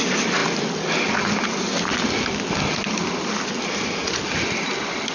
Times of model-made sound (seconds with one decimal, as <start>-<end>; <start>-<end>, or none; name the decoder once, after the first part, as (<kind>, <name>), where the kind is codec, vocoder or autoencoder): none